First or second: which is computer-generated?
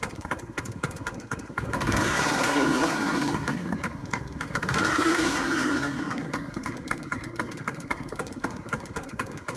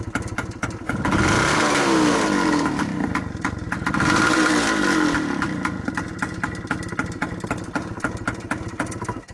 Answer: first